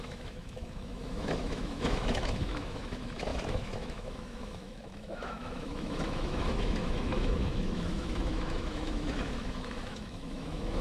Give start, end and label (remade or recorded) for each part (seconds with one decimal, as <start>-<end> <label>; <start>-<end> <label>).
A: 0.0-10.8 remade

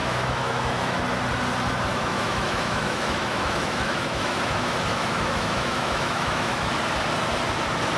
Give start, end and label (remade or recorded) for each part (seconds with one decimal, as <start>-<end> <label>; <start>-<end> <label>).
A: 0.0-1.0 remade; 1.0-1.9 recorded; 1.9-6.7 remade; 6.7-8.0 recorded

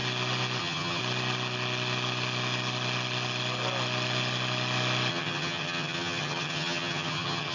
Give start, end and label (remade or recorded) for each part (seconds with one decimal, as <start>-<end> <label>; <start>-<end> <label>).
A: 0.0-0.6 recorded; 0.6-1.0 remade; 1.0-5.1 recorded; 5.1-7.5 remade

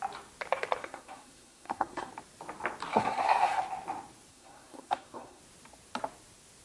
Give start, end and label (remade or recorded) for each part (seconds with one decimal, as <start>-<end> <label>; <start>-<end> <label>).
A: 0.0-0.8 recorded; 0.8-2.1 remade; 2.1-2.9 recorded; 2.9-3.6 remade; 3.6-4.3 recorded; 4.3-5.4 remade; 5.4-6.6 recorded

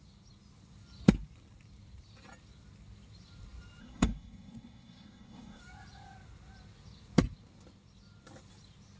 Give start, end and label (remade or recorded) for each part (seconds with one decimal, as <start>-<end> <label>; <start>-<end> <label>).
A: 0.0-3.8 recorded; 3.8-5.6 remade; 5.6-9.0 recorded